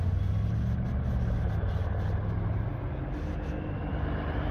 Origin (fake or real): real